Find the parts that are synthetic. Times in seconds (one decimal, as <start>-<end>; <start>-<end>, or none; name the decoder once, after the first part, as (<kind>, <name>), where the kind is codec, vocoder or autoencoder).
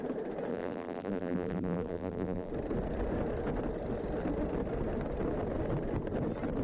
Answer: 0.5-2.5 (vocoder, BigVGAN v2)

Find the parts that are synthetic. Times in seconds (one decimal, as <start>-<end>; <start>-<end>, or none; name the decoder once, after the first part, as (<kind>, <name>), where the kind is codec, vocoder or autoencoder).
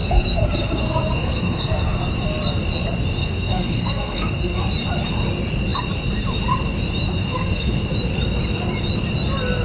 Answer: 0.0-2.0 (codec, SNAC); 3.2-4.6; 7.1-7.9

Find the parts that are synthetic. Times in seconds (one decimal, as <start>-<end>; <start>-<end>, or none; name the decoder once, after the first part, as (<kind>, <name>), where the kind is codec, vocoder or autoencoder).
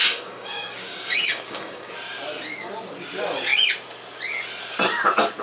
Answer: 0.0-1.9 (codec, DAC)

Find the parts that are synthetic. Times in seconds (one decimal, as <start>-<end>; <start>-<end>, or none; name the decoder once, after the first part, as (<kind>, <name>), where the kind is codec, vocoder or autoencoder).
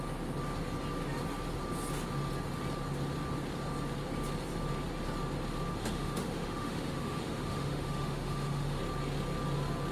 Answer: 5.8-8.8 (autoencoder, DAC-VAE)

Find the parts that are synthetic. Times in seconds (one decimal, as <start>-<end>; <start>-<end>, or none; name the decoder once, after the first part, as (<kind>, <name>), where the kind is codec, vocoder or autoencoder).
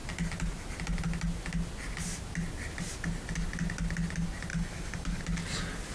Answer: 4.5-5.2 (codec, DAC)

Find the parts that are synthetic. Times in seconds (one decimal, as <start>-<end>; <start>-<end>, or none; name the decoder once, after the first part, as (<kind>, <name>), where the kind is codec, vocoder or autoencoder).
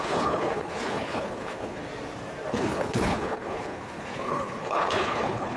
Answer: 0.0-1.8 (codec, HILCodec); 2.5-5.6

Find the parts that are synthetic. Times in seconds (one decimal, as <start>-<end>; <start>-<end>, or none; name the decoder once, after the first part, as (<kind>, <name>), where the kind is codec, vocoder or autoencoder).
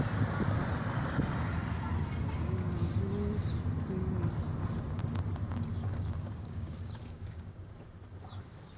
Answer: 5.7-7.7 (codec, DAC)